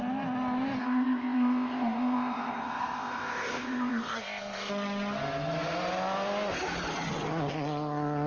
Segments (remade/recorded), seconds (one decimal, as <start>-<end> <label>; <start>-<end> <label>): 0.0-0.8 recorded; 0.8-4.7 remade; 4.7-8.3 recorded